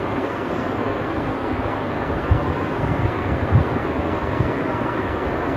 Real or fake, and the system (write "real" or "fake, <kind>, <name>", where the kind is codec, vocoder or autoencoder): fake, codec, SNAC